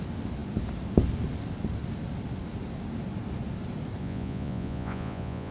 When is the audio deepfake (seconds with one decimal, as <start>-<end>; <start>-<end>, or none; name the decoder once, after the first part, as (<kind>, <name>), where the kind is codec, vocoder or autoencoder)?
4.0-5.5 (vocoder, Vocos)